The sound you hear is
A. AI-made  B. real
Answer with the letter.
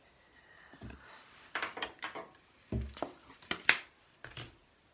B